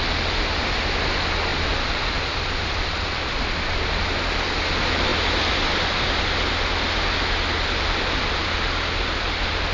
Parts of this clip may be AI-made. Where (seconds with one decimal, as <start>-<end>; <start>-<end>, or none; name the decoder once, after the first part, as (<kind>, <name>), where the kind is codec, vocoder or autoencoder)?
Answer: 1.5-3.9 (vocoder, BigVGAN v2)